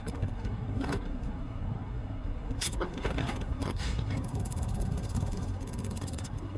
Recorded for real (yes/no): no